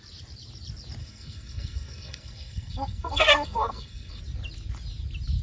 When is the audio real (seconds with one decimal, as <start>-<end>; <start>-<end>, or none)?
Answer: 0.0-1.0; 4.2-5.4